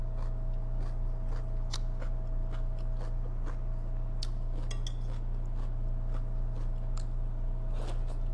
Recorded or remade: recorded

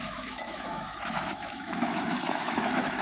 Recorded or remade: remade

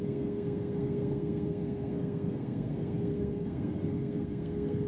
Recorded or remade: remade